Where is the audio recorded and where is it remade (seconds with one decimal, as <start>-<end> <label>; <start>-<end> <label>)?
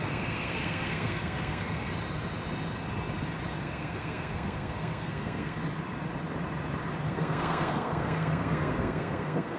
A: 0.0-1.9 remade; 1.9-3.6 recorded; 3.6-5.6 remade; 5.6-7.1 recorded; 7.1-9.6 remade